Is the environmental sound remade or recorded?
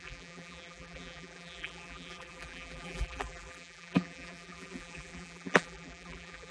remade